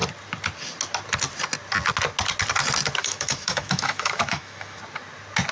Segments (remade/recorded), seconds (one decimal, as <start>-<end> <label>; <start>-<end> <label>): 0.0-3.0 recorded; 3.0-4.8 remade; 4.8-5.5 recorded